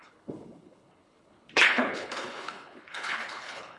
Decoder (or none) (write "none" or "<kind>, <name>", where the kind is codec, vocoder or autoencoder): codec, HILCodec